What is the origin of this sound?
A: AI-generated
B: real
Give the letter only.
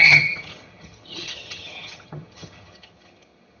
A